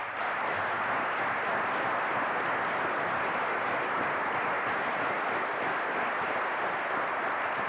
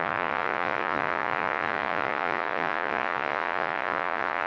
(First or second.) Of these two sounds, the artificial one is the second